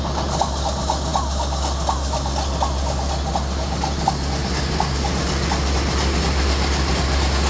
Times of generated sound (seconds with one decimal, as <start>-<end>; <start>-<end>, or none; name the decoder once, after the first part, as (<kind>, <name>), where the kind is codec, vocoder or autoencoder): none